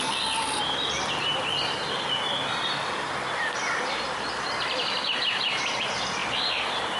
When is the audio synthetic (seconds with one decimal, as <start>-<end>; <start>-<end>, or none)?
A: 0.0-6.2